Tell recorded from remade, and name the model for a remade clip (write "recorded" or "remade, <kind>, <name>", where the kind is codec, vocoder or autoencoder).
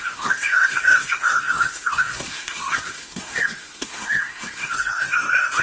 remade, codec, SNAC